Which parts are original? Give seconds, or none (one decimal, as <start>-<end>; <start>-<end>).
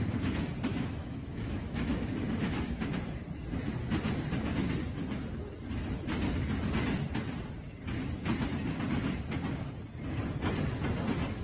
0.0-0.7; 2.9-11.4